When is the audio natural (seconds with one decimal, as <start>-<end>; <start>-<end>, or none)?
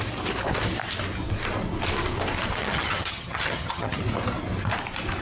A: 0.0-2.6; 4.0-5.2